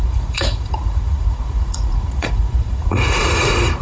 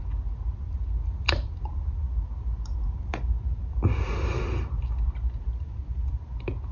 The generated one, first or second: first